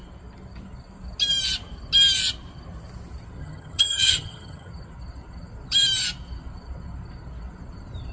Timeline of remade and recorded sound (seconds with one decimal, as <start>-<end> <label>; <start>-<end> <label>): 0.0-3.4 recorded; 3.4-4.7 remade; 4.7-8.1 recorded